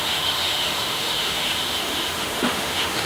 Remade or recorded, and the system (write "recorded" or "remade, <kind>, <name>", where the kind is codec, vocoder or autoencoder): remade, autoencoder, DAC-VAE